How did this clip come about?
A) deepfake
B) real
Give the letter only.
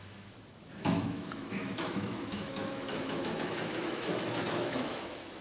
A